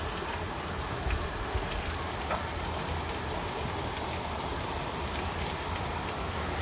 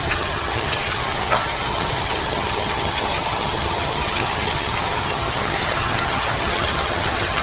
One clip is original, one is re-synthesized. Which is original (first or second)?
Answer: first